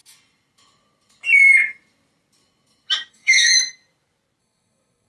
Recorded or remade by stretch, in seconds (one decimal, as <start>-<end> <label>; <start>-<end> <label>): 0.0-3.1 recorded; 3.1-3.5 remade; 3.5-4.4 recorded; 4.4-5.1 remade